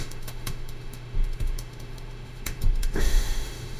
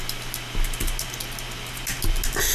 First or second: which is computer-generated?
first